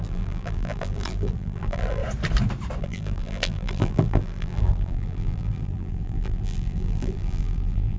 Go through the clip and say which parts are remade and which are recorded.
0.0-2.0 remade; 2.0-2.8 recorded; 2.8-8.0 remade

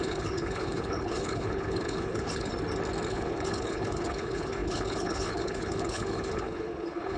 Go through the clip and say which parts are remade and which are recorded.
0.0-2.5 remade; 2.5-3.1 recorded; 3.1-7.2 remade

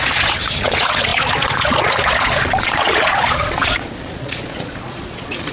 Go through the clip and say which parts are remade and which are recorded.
0.0-5.5 remade

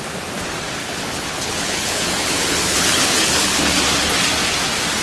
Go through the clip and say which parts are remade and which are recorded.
0.0-0.8 recorded; 0.8-3.8 remade; 3.8-5.0 recorded